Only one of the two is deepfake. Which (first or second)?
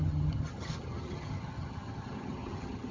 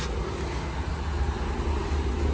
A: first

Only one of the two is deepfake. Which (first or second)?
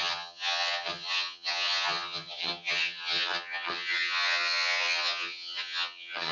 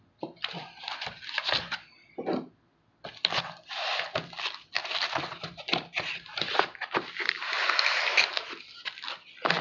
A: first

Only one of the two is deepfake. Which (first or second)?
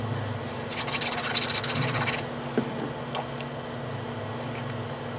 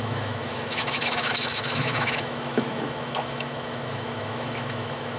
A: second